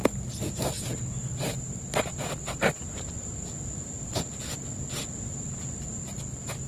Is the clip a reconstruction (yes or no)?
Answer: no